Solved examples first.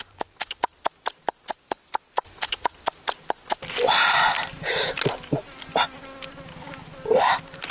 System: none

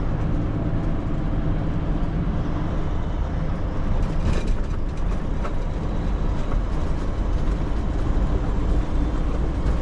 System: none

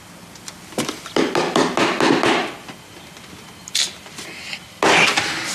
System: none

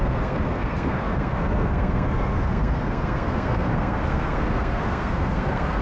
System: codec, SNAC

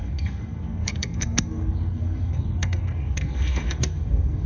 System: codec, SNAC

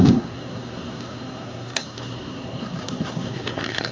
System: codec, SNAC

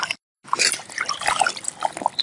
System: none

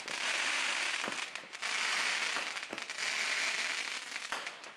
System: none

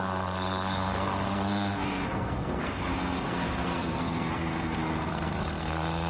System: codec, SNAC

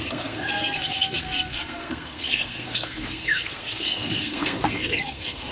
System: codec, SNAC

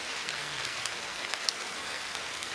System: codec, SNAC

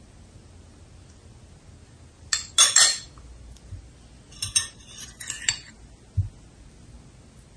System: none